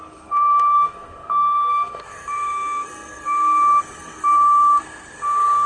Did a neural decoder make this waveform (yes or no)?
yes